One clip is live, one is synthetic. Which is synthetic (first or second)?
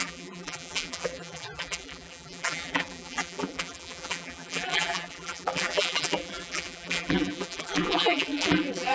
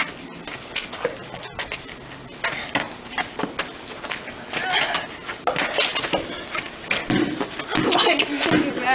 first